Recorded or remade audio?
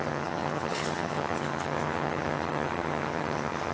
remade